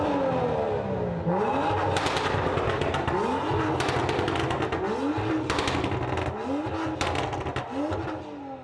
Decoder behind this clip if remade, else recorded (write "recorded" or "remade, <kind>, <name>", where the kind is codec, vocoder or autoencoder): recorded